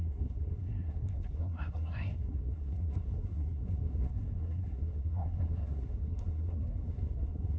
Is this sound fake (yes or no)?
yes